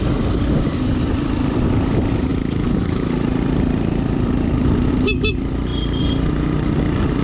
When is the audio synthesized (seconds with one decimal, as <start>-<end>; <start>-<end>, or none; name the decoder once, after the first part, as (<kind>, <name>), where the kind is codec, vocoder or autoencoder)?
0.0-5.7 (vocoder, BigVGAN v2)